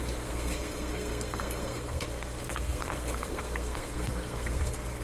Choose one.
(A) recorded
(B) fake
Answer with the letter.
B